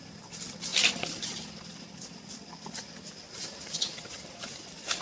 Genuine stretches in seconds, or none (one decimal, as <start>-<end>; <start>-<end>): 0.0-5.0